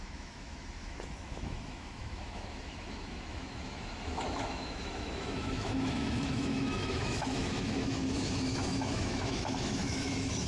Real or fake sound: fake